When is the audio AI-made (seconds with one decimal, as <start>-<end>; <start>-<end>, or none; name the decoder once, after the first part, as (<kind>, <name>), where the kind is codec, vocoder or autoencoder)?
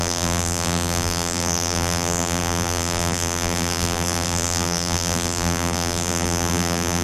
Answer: 0.0-7.0 (vocoder, BigVGAN v2)